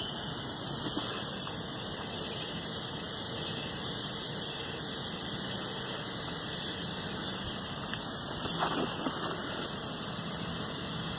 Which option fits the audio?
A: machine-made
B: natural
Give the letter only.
B